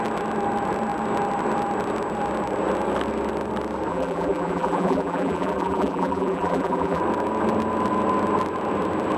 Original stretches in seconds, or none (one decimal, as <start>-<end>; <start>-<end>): 0.0-3.9; 7.0-9.2